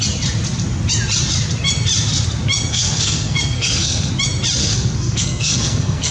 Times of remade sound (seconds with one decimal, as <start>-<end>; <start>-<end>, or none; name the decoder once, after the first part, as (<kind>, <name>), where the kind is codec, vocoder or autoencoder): 2.7-4.1 (codec, SNAC); 4.6-6.1